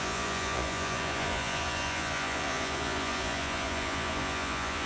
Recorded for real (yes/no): no